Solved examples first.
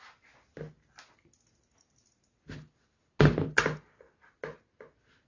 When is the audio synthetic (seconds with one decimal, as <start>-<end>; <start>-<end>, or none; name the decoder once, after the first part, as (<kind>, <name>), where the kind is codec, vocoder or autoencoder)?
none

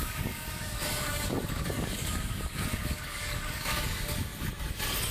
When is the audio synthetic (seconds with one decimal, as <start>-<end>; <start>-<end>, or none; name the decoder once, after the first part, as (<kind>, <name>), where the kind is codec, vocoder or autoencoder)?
0.0-4.3 (codec, DAC)

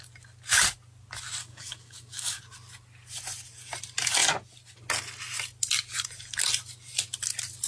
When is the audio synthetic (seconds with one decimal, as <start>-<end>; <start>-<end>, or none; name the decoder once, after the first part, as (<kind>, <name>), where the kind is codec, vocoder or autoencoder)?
1.4-2.4 (codec, DAC)

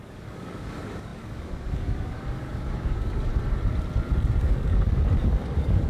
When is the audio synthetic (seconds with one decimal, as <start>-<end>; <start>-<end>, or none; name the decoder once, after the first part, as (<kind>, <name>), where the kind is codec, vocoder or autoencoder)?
0.0-3.3 (codec, DAC); 4.4-5.9

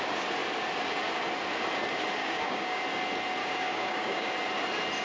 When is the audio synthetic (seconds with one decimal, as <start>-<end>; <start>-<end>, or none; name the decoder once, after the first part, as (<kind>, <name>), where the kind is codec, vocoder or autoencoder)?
2.2-2.8 (codec, DAC); 3.4-4.3

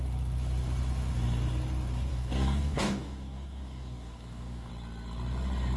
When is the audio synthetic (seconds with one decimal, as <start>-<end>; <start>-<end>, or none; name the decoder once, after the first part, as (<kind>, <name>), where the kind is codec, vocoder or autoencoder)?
2.1-4.7 (codec, DAC)

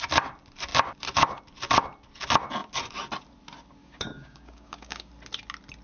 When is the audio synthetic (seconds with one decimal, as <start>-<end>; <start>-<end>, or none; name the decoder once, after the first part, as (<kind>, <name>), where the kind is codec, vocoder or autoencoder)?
3.8-5.1 (codec, DAC)

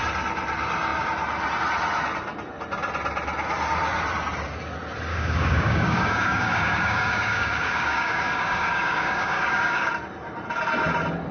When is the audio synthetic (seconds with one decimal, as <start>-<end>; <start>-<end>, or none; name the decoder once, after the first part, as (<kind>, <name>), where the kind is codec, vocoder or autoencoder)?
5.1-9.9 (codec, DAC)